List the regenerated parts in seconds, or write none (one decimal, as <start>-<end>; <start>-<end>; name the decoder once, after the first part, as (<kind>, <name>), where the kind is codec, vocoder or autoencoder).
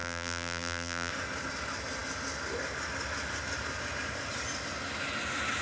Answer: 0.0-1.1 (vocoder, BigVGAN v2)